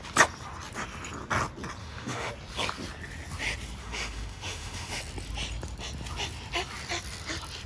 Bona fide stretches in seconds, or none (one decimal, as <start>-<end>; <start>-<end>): 0.0-1.8; 2.3-3.8; 5.0-7.7